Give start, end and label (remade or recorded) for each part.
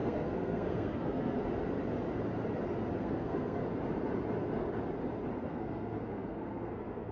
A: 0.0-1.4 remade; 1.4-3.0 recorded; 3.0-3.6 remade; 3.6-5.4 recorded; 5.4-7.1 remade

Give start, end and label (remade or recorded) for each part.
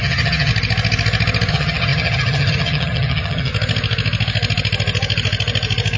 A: 0.0-0.5 remade; 0.5-1.5 recorded; 1.5-3.5 remade; 3.5-6.0 recorded